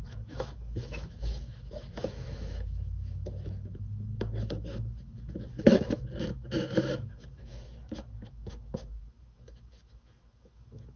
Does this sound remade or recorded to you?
remade